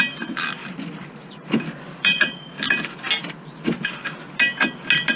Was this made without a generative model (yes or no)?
yes